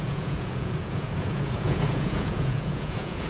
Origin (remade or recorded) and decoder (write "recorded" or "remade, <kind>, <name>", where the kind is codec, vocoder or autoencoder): remade, vocoder, Vocos